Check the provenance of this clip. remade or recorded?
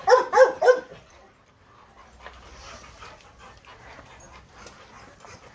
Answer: recorded